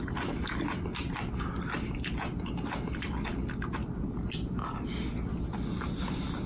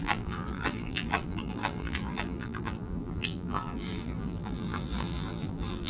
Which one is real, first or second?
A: first